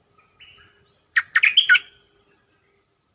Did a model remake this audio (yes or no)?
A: no